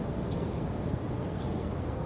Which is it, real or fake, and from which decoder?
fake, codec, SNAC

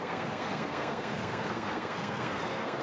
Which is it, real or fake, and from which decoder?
fake, codec, SNAC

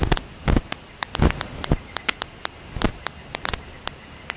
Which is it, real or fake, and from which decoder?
real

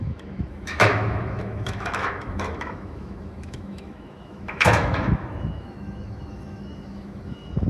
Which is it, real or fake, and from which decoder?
fake, autoencoder, DAC-VAE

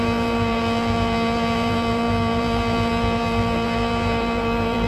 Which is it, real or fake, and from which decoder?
fake, vocoder, BigVGAN v2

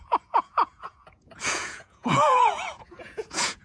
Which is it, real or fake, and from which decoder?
fake, vocoder, Vocos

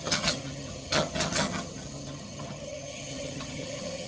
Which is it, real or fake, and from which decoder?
fake, vocoder, HiFi-GAN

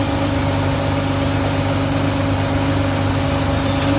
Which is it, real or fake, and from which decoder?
real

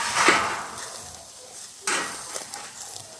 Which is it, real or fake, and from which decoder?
real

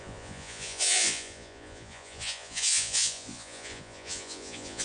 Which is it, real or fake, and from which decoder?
fake, vocoder, Vocos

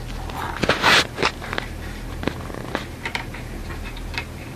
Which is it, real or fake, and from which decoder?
fake, vocoder, BigVGAN v2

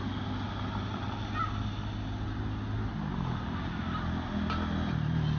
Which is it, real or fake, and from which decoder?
real